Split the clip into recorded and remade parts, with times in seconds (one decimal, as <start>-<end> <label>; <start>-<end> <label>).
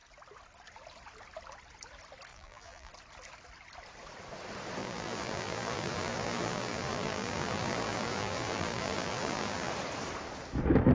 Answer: 0.0-2.3 recorded; 2.3-2.9 remade; 2.9-4.8 recorded; 4.8-9.7 remade; 9.7-10.9 recorded